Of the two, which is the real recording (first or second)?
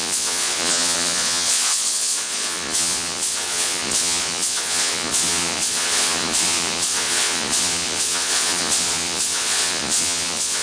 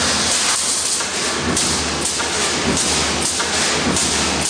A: second